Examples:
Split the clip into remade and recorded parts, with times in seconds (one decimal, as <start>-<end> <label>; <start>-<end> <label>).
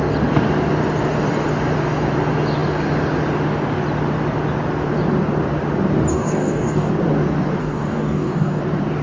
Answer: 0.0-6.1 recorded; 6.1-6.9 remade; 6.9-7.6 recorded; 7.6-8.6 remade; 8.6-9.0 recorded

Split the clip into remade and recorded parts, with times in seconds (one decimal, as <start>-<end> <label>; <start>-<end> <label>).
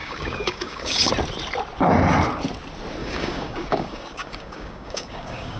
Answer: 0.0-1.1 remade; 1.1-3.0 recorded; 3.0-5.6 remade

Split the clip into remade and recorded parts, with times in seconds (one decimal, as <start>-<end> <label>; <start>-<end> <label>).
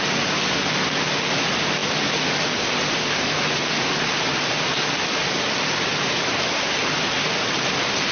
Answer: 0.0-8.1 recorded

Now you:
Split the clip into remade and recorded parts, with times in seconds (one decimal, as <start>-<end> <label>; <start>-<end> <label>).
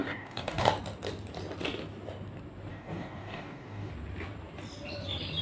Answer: 0.0-0.7 remade; 0.7-2.7 recorded; 2.7-3.9 remade; 3.9-5.4 recorded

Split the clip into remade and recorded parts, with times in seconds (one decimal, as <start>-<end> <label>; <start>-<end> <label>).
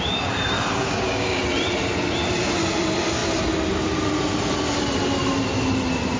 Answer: 0.0-0.8 recorded; 0.8-1.4 remade; 1.4-6.2 recorded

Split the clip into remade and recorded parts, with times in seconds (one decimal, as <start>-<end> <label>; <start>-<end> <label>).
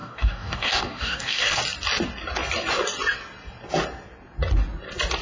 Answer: 0.0-1.6 remade; 1.6-5.2 recorded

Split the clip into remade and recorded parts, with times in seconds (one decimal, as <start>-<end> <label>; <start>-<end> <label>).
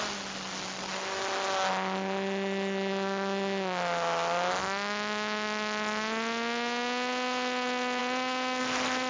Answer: 0.0-9.1 recorded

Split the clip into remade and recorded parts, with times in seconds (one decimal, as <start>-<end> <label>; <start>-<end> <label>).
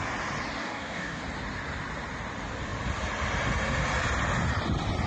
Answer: 0.0-0.6 recorded; 0.6-1.2 remade; 1.2-5.1 recorded